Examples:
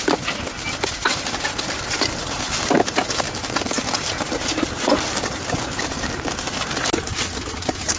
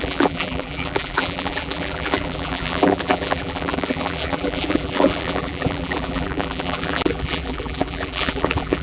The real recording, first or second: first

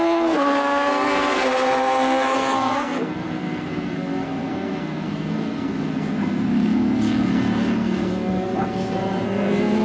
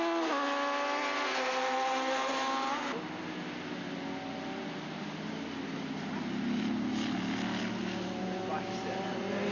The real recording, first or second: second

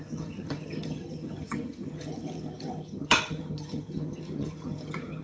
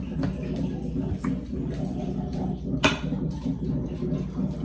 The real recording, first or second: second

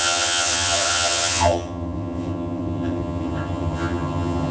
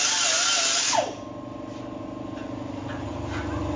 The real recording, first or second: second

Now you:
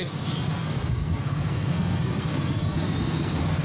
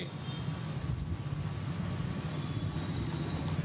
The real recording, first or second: second